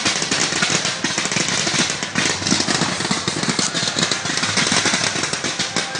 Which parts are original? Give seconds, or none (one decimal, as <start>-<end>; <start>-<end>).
0.0-6.0